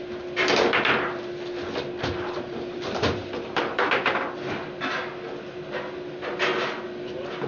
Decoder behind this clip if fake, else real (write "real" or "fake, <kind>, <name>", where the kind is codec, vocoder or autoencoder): real